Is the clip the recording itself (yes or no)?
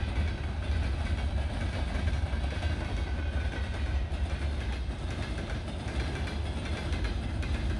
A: yes